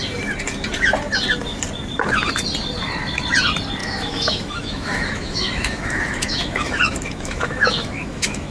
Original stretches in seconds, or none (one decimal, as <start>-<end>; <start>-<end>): 0.0-3.8